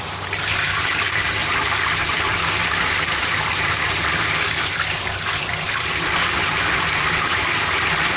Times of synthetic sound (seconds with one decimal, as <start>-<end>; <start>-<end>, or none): 0.0-8.2